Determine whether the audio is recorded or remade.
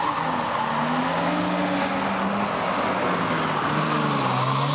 recorded